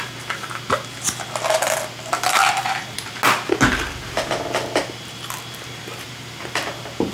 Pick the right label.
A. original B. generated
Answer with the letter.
A